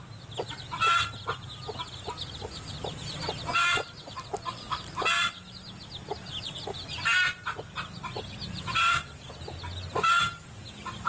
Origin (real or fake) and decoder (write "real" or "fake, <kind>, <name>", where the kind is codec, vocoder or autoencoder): real